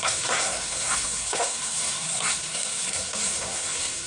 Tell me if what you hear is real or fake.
fake